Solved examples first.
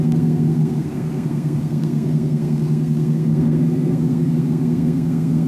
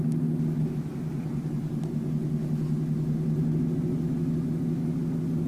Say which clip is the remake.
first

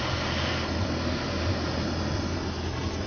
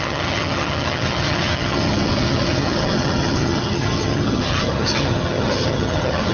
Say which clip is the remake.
second